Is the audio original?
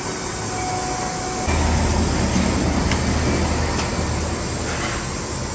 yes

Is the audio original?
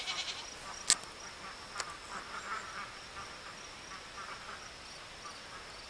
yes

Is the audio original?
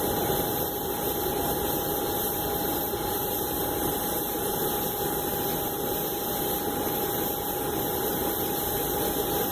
yes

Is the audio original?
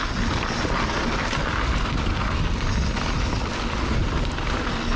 yes